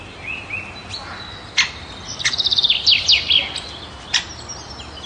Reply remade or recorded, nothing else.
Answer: recorded